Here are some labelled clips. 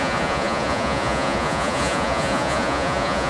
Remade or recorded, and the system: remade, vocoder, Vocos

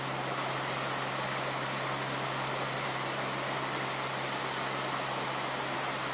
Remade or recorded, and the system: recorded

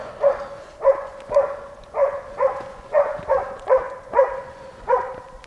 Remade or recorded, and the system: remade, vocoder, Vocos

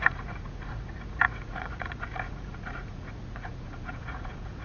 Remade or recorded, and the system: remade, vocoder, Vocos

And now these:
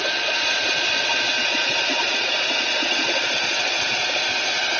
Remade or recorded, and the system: remade, vocoder, Vocos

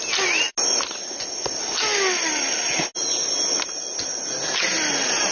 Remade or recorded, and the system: recorded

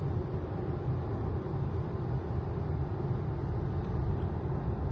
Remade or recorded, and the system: recorded